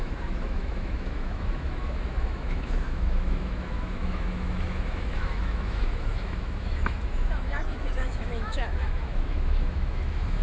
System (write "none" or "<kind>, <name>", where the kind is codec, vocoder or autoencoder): autoencoder, DAC-VAE